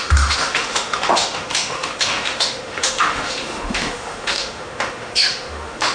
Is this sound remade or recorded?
remade